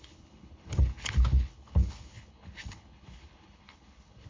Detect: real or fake fake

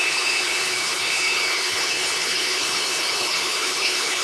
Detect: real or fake fake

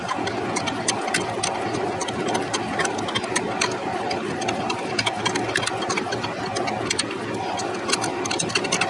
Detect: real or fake real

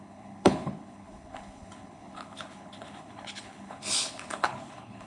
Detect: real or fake fake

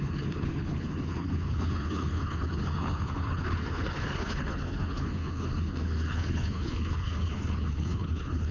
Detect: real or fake fake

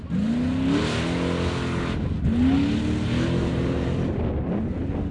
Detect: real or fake real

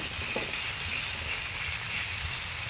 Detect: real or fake real